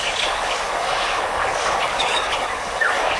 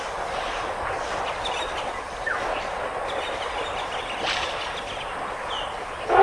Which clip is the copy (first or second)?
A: first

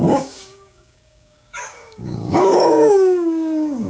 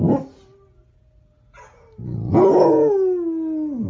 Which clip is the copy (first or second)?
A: first